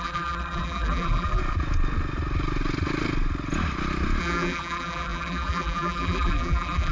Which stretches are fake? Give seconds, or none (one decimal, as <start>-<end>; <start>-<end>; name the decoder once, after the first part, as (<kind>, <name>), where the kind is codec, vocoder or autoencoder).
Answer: 0.0-1.4 (vocoder, BigVGAN v2); 4.2-6.9